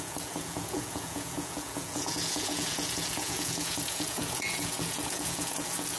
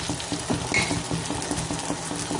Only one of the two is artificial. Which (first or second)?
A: first